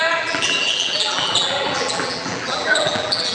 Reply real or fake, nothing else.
fake